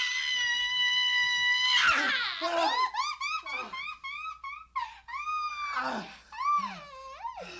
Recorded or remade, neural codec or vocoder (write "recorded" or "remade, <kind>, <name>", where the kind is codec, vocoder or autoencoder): recorded